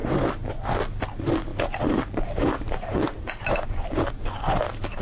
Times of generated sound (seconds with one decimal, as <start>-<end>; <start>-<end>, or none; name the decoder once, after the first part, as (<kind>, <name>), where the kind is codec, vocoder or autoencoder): 1.5-4.1 (vocoder, BigVGAN v2)